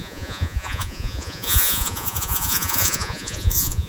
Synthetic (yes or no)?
yes